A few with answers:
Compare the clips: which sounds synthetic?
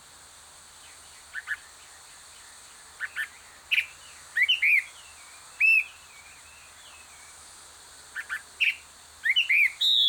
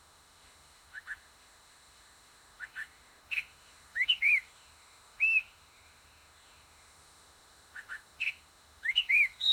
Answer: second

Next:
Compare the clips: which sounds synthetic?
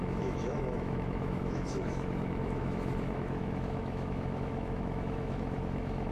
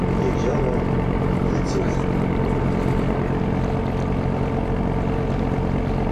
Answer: first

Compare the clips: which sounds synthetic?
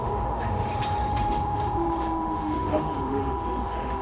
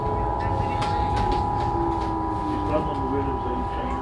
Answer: first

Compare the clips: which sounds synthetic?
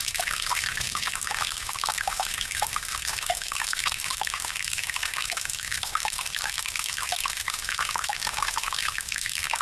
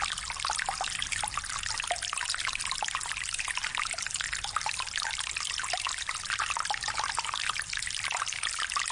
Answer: first